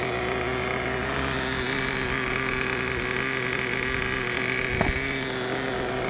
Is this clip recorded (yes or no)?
yes